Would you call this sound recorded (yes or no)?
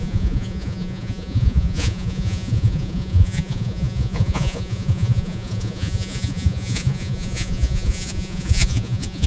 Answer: no